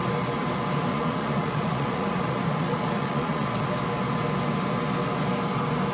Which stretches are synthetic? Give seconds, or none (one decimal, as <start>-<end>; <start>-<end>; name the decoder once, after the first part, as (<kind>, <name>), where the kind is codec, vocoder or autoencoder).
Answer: 0.9-3.7 (vocoder, Vocos)